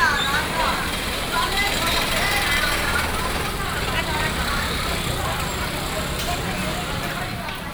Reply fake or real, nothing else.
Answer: real